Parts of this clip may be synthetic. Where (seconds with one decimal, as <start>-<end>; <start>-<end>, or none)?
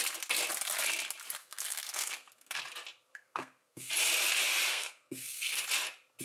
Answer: 1.4-2.6; 3.1-3.9; 4.7-5.6